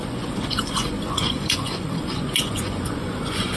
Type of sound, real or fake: fake